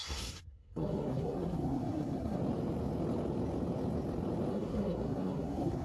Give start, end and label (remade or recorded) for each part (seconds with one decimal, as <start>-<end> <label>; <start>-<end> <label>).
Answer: 0.0-2.4 remade; 2.4-4.5 recorded; 4.5-5.8 remade